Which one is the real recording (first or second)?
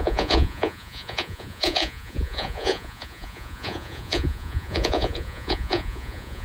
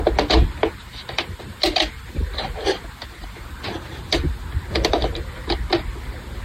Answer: second